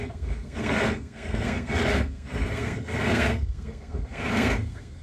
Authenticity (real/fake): fake